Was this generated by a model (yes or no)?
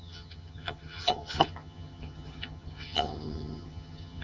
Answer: yes